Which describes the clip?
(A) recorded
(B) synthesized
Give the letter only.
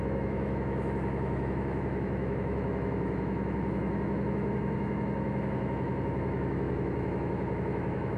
B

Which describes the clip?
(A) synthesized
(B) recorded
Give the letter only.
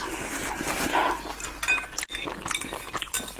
B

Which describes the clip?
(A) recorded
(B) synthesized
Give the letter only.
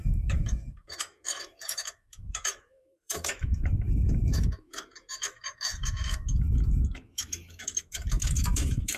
B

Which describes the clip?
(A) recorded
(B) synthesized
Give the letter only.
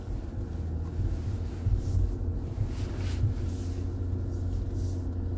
A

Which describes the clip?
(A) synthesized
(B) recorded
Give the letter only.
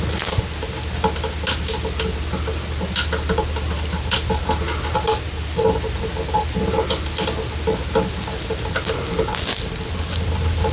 B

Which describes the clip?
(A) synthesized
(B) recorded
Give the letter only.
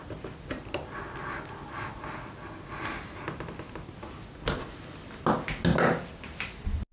B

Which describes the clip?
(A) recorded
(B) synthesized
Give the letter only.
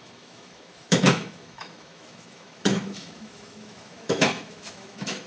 B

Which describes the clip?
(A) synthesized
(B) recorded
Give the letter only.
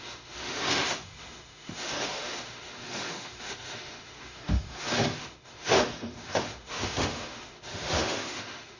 A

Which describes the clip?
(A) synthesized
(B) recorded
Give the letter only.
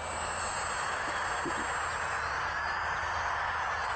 B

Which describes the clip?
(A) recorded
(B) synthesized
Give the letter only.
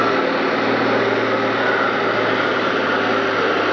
A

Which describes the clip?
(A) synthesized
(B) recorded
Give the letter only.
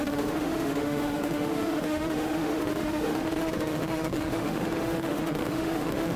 A